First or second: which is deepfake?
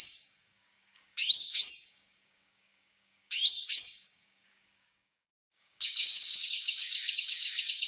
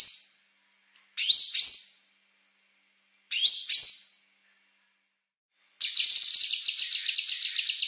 first